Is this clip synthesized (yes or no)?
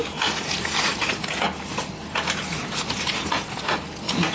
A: no